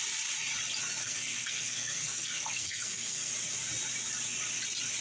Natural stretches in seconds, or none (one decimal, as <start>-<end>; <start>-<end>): 0.0-1.0; 3.3-5.0